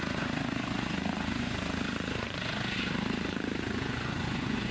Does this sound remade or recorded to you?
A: remade